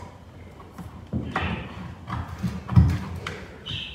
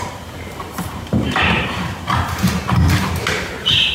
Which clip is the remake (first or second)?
second